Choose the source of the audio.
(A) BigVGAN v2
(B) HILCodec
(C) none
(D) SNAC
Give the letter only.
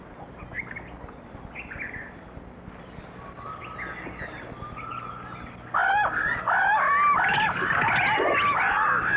C